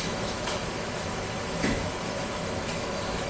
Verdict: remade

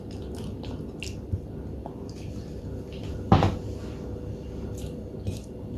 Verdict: recorded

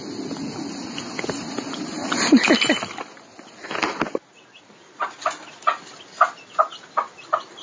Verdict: recorded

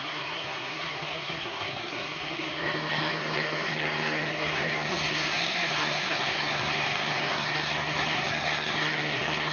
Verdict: remade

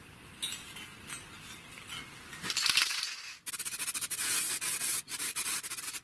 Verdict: recorded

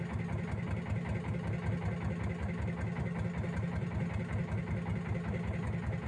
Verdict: recorded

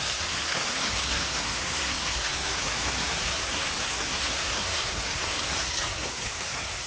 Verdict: remade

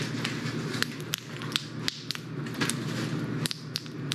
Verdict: recorded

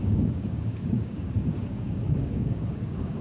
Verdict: remade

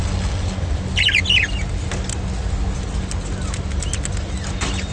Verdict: recorded